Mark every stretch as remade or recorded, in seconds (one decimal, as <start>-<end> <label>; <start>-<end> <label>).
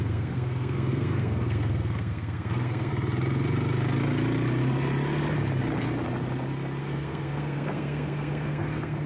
0.0-2.9 remade; 2.9-6.8 recorded; 6.8-9.1 remade